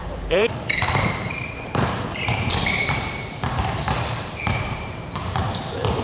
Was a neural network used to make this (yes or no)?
yes